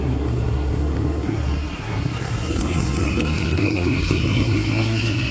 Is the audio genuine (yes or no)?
no